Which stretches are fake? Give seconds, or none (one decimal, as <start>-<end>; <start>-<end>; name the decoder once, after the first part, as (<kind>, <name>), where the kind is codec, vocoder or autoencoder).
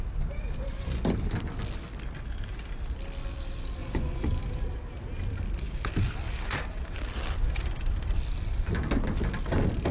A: 3.8-4.4 (vocoder, Vocos)